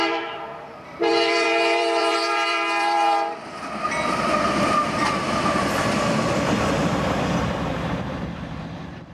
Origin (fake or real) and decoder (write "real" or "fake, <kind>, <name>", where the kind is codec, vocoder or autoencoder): fake, vocoder, BigVGAN v2